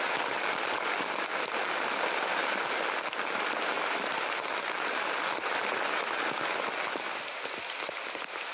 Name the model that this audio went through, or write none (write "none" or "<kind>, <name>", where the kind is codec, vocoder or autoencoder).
none